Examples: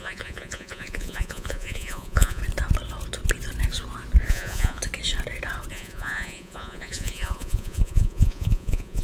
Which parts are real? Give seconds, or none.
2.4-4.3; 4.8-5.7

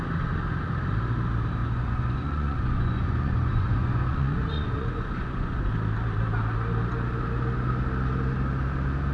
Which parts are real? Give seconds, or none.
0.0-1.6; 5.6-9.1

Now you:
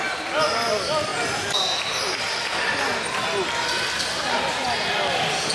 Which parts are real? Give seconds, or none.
0.0-5.5